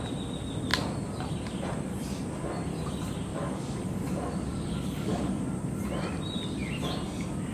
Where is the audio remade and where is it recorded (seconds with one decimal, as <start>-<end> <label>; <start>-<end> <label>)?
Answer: 0.0-3.3 recorded; 3.3-5.4 remade; 5.4-7.5 recorded